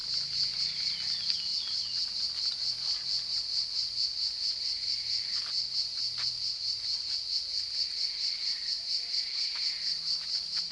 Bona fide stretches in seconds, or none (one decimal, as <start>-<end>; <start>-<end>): 0.0-10.7